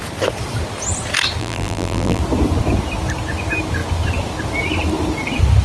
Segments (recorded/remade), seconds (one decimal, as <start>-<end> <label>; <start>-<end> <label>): 0.0-1.4 recorded; 1.4-2.2 remade; 2.2-5.6 recorded